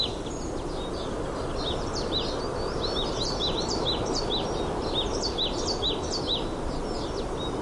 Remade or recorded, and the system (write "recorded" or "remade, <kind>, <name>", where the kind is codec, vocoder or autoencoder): recorded